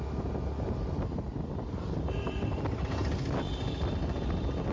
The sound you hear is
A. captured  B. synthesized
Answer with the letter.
A